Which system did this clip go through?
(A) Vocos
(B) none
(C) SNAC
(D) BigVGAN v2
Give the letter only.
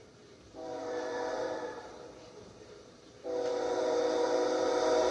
D